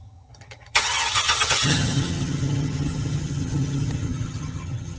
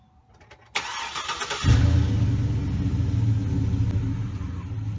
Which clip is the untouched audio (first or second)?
second